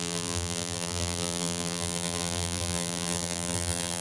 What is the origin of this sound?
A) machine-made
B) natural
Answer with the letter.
A